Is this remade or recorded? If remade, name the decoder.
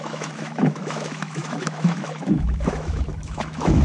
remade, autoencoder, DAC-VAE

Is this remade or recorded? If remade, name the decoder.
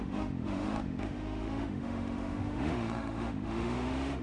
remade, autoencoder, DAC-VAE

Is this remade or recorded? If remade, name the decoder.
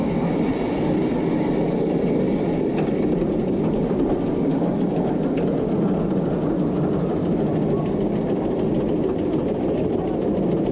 recorded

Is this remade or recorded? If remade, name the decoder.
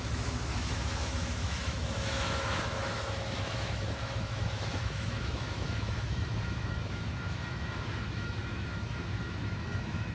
remade, autoencoder, DAC-VAE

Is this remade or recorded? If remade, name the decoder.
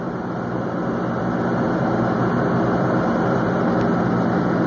recorded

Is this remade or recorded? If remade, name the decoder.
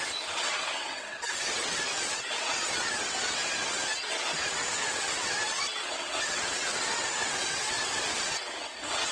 remade, vocoder, WaveNeXt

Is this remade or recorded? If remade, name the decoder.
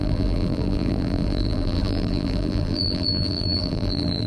remade, vocoder, BigVGAN v2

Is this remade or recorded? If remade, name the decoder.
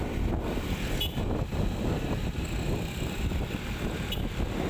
recorded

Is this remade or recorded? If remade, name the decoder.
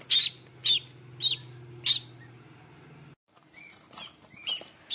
recorded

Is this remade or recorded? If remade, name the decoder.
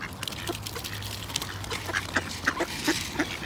recorded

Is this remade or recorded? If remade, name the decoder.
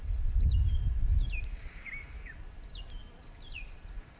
recorded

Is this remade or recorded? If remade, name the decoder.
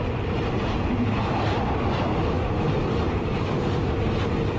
recorded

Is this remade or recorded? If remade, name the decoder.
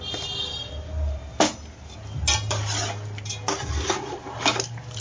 recorded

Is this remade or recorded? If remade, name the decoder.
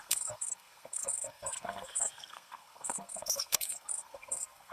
remade, codec, SNAC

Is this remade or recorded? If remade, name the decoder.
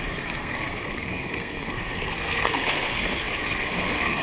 remade, codec, SNAC